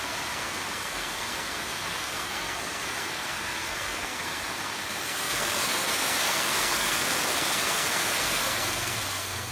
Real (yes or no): no